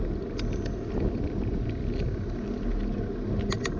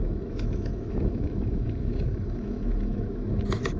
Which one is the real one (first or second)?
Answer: first